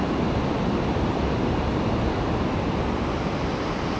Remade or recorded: recorded